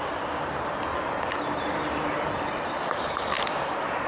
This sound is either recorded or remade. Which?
recorded